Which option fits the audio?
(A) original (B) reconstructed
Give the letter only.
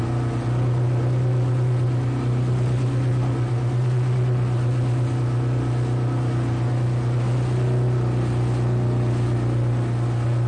A